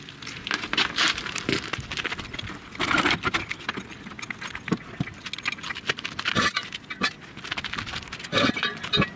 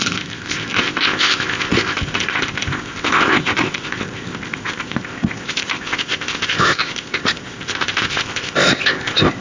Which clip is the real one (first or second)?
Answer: first